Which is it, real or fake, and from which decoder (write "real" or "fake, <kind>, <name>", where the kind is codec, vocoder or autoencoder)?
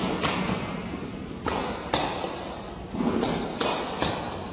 real